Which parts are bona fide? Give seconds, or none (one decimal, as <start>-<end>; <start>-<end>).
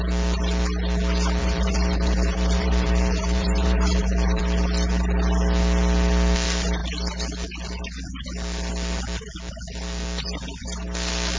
0.0-1.4; 4.4-11.4